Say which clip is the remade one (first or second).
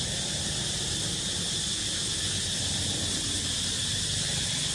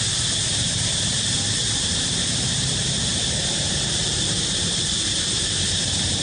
second